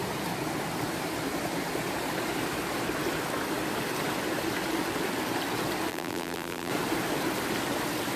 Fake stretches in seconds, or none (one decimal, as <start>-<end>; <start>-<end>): 5.9-6.7